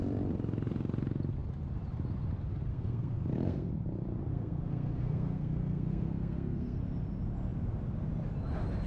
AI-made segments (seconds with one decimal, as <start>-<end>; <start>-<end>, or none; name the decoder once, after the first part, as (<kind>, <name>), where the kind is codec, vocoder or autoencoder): 2.7-3.7 (codec, SNAC); 4.3-6.8